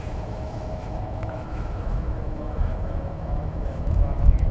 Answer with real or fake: fake